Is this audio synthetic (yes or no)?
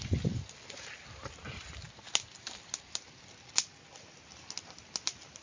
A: no